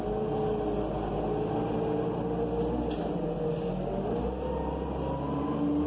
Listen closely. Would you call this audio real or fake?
real